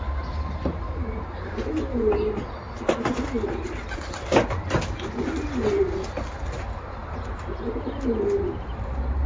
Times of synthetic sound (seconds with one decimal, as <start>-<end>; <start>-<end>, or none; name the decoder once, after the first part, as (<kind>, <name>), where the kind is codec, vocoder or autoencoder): none